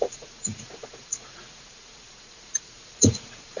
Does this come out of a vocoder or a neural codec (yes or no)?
yes